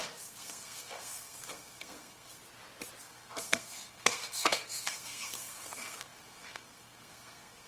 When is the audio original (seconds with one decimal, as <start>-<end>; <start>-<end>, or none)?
2.4-3.0